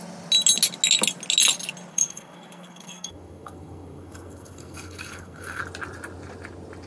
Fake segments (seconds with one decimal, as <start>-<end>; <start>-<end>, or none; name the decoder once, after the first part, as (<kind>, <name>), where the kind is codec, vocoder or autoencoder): 1.9-5.6 (codec, SNAC)